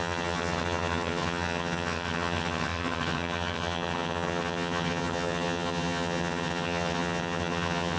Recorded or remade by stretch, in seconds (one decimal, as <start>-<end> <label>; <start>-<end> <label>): 0.0-8.0 remade